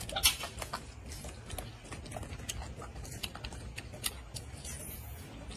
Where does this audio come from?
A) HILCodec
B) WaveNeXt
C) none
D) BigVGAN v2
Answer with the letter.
C